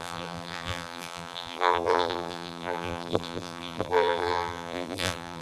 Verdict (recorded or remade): remade